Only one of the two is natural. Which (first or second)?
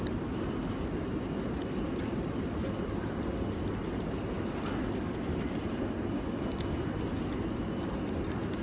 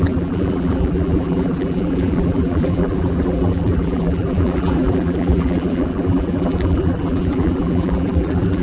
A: first